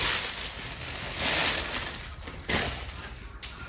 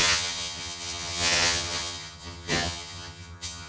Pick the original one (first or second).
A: first